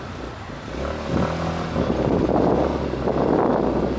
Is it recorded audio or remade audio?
recorded